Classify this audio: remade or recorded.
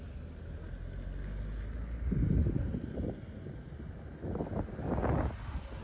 recorded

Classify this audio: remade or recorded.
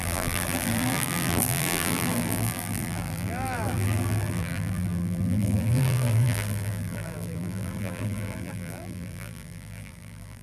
remade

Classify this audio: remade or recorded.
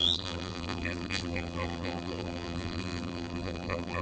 remade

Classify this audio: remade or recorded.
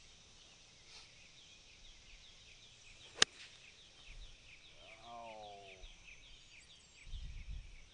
recorded